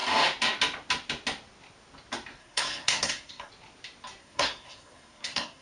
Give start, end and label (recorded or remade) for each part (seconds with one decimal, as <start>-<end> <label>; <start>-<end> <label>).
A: 0.0-2.4 recorded; 2.4-3.5 remade; 3.5-4.2 recorded; 4.2-5.6 remade